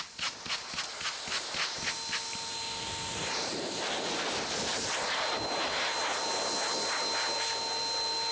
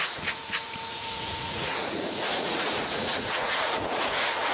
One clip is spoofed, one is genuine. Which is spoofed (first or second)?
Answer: second